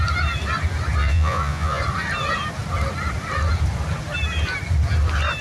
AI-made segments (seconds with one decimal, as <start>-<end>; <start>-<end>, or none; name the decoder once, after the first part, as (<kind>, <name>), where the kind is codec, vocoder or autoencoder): 1.0-1.8 (vocoder, Vocos)